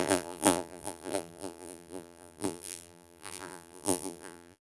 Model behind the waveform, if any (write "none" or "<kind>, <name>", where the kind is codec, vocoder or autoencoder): vocoder, BigVGAN v2